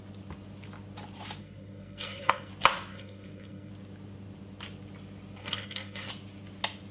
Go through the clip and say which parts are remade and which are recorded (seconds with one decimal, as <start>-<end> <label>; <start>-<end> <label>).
0.0-1.4 recorded; 1.4-2.5 remade; 2.5-2.9 recorded; 2.9-3.7 remade; 3.7-5.4 recorded; 5.4-6.1 remade; 6.1-6.9 recorded